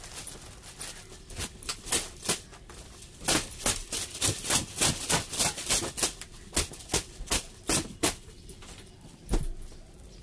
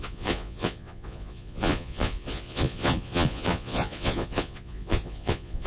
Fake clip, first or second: second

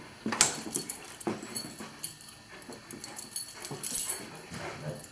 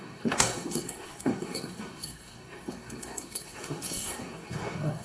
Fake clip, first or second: second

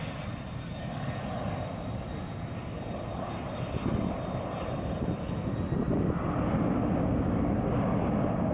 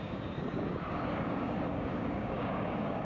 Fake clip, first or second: second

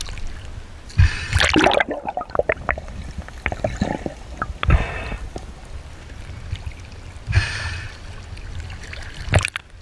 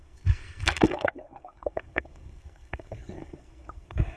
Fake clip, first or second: second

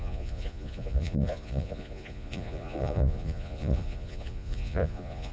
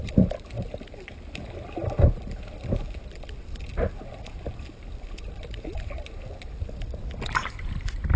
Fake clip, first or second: first